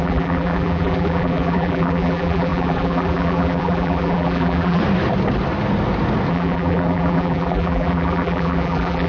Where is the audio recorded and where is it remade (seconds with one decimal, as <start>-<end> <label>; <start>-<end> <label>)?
0.0-4.8 remade; 4.8-6.3 recorded; 6.3-9.1 remade